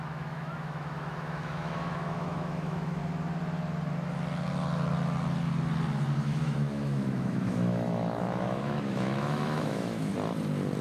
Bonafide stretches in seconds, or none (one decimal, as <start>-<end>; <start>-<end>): 3.0-6.2; 10.1-10.8

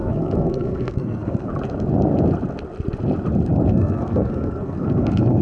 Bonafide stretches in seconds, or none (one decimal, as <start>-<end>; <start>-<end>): 1.5-3.7

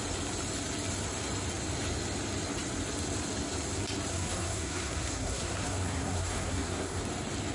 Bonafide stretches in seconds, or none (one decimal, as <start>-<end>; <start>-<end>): 0.0-4.1; 7.0-7.5

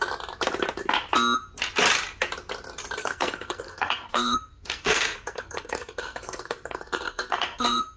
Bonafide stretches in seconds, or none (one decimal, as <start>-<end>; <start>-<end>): 0.0-3.0